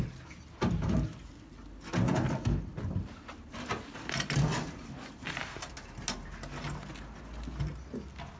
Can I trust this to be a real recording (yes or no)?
yes